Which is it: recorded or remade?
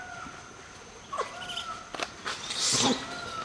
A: recorded